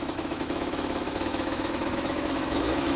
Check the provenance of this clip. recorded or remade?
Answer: remade